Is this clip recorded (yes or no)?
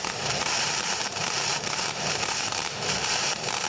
no